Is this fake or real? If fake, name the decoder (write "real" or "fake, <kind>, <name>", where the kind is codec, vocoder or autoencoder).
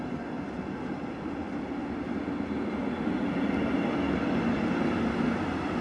real